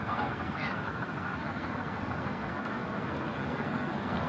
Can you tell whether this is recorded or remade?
remade